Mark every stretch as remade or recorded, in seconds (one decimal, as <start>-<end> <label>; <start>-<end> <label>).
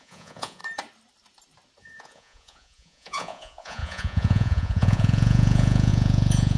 0.0-0.6 remade; 0.6-1.8 recorded; 1.8-6.6 remade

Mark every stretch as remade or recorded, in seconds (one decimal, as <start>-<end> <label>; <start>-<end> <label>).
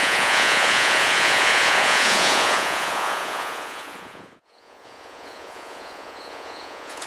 0.0-7.1 remade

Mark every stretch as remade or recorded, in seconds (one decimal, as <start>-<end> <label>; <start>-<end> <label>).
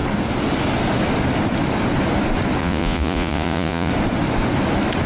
0.0-2.6 recorded; 2.6-3.9 remade; 3.9-5.1 recorded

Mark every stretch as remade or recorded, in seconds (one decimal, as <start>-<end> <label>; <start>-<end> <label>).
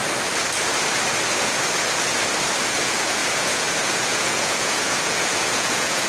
0.0-2.7 recorded; 2.7-6.1 remade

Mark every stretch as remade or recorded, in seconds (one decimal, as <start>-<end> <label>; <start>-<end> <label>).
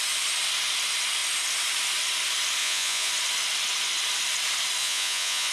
0.0-2.6 recorded; 2.6-3.1 remade; 3.1-4.8 recorded; 4.8-5.5 remade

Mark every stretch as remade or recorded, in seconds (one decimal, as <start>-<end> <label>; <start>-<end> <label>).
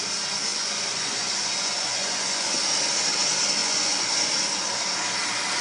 0.0-0.5 recorded; 0.5-2.5 remade; 2.5-3.6 recorded; 3.6-4.3 remade; 4.3-5.6 recorded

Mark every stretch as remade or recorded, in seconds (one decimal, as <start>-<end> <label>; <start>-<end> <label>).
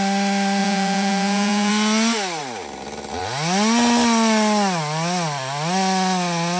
0.0-0.6 recorded; 0.6-1.7 remade; 1.7-6.6 recorded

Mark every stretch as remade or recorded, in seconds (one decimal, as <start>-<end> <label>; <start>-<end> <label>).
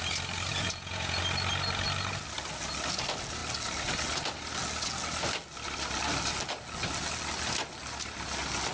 0.0-0.5 recorded; 0.5-1.2 remade; 1.2-8.7 recorded